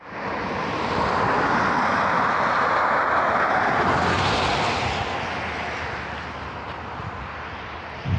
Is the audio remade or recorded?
recorded